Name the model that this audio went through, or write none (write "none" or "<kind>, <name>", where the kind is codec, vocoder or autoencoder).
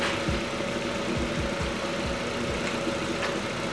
none